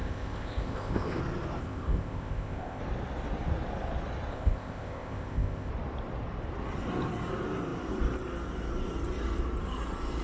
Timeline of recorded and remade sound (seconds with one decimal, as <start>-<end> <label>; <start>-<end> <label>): 0.0-1.2 remade; 1.2-1.6 recorded; 1.6-2.8 remade; 2.8-4.3 recorded; 4.3-5.7 remade; 5.7-10.2 recorded